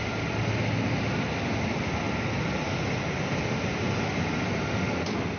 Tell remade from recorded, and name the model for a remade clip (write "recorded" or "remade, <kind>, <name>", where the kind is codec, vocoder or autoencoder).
recorded